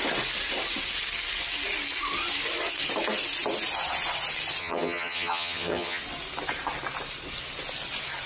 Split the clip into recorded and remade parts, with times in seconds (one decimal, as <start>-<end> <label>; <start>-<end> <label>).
0.0-4.6 recorded; 4.6-6.0 remade; 6.0-8.3 recorded